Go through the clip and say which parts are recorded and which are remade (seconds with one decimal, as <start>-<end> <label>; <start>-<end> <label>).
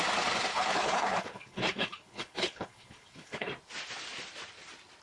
0.0-0.5 recorded; 0.5-3.5 remade; 3.5-5.0 recorded